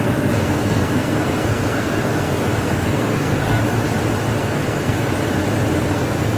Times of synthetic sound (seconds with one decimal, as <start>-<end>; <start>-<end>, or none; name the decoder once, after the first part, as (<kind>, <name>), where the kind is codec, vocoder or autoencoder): 0.0-3.6 (codec, SNAC); 4.4-5.1; 5.8-6.4